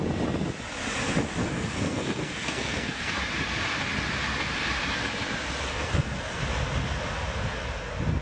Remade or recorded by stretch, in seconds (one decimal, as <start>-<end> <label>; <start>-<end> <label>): 0.0-1.4 recorded; 1.4-3.2 remade; 3.2-5.7 recorded; 5.7-6.4 remade; 6.4-8.2 recorded